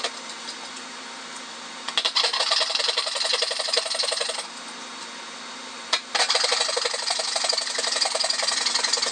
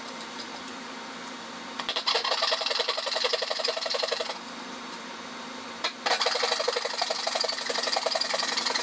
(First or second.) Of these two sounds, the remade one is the second